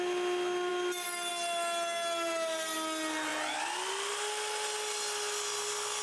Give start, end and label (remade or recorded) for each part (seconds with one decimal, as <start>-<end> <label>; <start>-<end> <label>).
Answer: 0.0-6.0 recorded